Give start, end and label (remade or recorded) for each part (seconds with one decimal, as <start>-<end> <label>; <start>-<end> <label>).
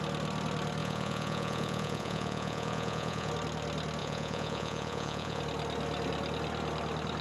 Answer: 0.0-0.8 recorded; 0.8-3.3 remade; 3.3-4.0 recorded; 4.0-5.4 remade; 5.4-7.2 recorded